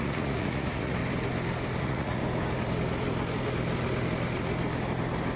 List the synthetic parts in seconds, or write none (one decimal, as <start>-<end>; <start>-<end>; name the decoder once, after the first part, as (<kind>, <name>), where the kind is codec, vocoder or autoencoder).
0.0-1.0 (vocoder, Vocos); 1.8-2.2